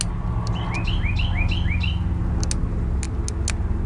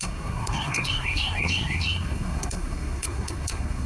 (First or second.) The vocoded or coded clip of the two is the second